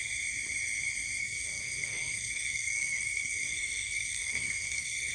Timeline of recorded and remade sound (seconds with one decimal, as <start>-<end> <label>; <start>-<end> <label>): 0.0-1.2 recorded; 1.2-5.1 remade